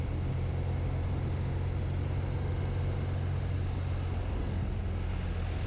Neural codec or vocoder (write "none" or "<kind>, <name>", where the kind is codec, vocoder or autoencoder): none